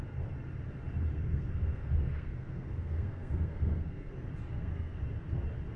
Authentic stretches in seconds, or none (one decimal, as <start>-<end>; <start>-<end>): 0.0-1.1; 4.1-4.5; 5.0-5.8